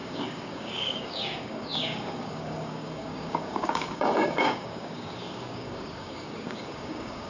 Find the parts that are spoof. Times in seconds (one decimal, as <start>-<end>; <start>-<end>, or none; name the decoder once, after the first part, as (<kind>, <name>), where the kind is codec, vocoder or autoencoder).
0.0-7.3 (codec, DAC)